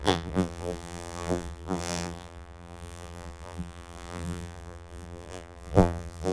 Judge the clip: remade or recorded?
remade